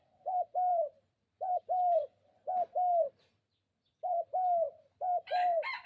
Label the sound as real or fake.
fake